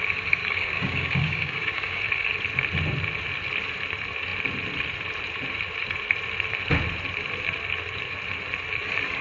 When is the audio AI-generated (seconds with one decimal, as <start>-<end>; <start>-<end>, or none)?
0.4-2.0